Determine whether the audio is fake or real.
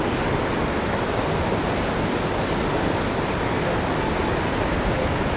real